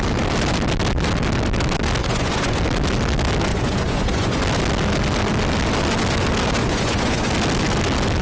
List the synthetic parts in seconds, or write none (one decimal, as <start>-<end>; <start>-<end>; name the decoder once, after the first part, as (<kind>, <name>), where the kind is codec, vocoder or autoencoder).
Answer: 2.0-2.6 (vocoder, Vocos); 3.5-4.4; 6.6-7.3